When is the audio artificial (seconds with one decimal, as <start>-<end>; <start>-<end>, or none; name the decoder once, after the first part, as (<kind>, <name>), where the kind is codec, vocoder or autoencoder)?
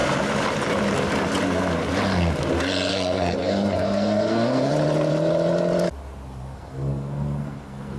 2.9-4.7 (codec, SNAC); 6.4-8.0